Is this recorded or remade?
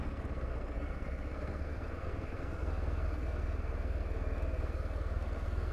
remade